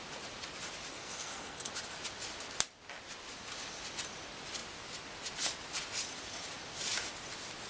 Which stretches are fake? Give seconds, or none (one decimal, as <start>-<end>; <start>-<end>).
0.9-1.7